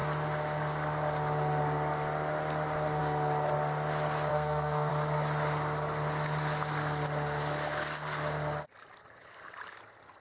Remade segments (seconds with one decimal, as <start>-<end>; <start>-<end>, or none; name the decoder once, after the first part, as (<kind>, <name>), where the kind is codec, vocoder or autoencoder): 4.3-4.9 (codec, SNAC)